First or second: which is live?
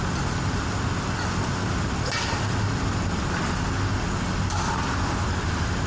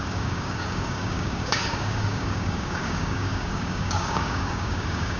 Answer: first